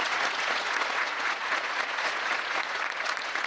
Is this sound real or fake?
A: fake